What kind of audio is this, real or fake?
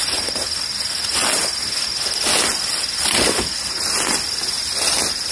real